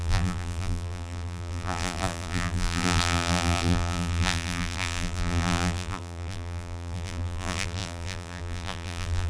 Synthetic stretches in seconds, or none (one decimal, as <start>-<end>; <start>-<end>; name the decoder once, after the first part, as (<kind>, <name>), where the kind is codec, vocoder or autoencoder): 0.0-9.3 (vocoder, BigVGAN v2)